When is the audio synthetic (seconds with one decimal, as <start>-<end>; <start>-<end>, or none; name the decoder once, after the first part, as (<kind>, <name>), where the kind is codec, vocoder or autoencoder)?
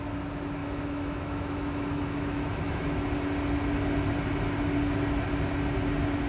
0.6-3.1 (autoencoder, DAC-VAE)